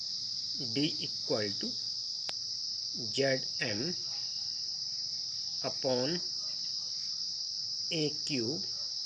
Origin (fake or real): fake